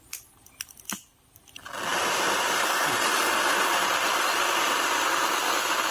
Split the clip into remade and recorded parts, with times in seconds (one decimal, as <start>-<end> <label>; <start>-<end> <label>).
0.0-5.9 recorded